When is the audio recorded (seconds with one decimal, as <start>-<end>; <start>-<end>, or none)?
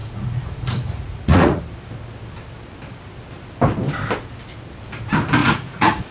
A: 1.6-5.4